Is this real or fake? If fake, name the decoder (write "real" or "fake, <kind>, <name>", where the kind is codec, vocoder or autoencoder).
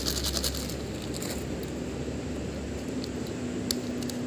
real